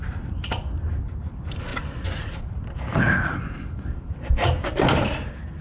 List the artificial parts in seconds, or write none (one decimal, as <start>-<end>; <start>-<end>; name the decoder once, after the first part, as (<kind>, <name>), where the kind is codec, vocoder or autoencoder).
none